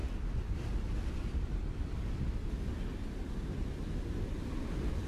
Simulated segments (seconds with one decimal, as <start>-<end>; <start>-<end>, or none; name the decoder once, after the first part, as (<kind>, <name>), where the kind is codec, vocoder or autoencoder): none